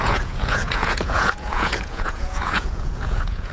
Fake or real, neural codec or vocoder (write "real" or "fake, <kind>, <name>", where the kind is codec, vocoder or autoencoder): fake, vocoder, Vocos